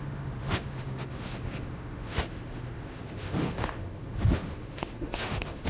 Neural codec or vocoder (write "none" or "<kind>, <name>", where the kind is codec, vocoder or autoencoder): autoencoder, DAC-VAE